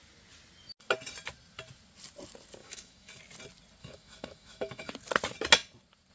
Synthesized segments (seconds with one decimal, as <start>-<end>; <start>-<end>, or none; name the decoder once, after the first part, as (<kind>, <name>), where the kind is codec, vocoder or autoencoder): 2.6-3.2 (autoencoder, DAC-VAE); 3.8-4.9